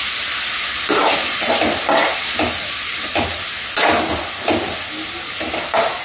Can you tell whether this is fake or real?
real